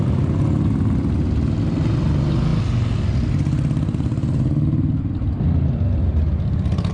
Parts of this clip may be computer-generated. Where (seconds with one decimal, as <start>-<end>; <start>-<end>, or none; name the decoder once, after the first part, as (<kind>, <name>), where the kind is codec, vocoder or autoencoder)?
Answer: none